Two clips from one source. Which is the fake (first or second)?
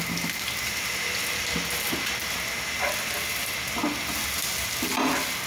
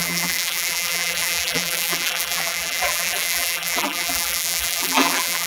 second